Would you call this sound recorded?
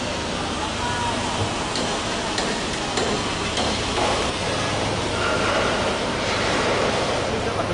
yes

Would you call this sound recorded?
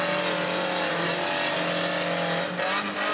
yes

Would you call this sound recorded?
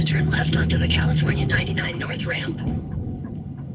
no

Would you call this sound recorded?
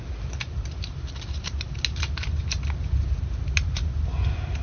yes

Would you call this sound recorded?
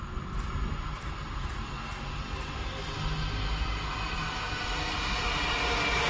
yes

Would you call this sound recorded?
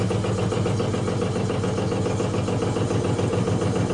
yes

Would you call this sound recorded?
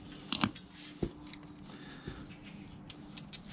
yes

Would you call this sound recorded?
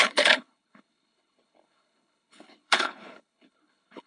no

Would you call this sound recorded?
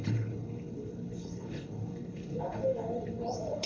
no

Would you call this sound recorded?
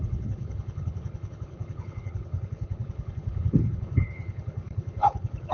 no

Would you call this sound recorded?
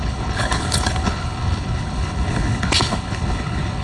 no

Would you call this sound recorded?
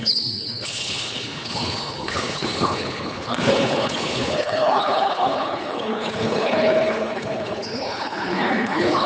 no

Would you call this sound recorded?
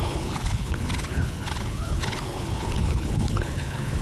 no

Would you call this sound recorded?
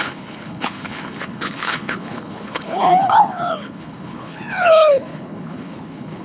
no